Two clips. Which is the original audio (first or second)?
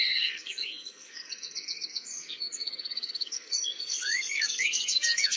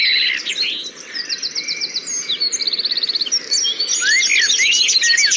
second